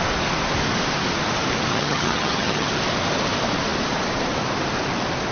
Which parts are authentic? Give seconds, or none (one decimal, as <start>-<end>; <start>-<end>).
0.0-1.7; 2.7-5.3